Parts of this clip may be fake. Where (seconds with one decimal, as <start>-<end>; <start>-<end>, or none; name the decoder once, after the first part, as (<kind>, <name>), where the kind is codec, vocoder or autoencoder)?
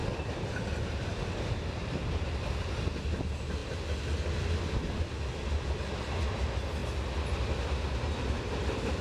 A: none